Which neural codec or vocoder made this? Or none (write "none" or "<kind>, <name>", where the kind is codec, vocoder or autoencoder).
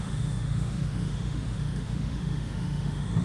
autoencoder, DAC-VAE